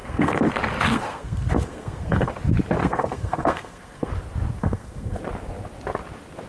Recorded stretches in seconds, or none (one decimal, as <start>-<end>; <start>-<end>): 0.5-0.9; 2.3-2.8; 4.1-4.6; 5.2-6.5